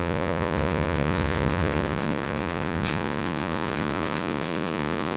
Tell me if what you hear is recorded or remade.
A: remade